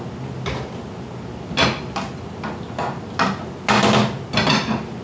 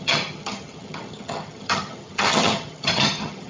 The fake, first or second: second